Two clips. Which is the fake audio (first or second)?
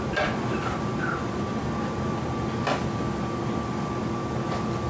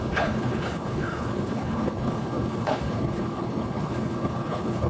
second